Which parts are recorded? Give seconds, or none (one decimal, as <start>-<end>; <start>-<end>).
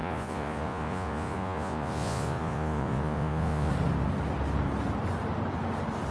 3.7-6.1